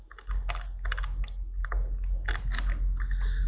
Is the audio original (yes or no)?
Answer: yes